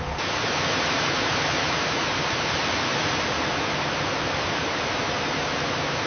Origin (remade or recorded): recorded